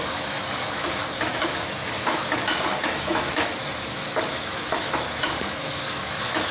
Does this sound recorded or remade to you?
remade